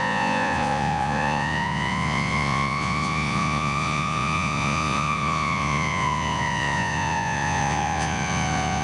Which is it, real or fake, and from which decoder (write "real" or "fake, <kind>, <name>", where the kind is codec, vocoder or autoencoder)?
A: fake, vocoder, Vocos